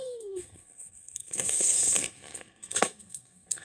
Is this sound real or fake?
fake